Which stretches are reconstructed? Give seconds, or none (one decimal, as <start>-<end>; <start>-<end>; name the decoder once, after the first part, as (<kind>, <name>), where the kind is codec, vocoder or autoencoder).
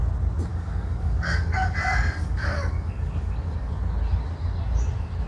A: 0.5-3.7 (codec, DAC)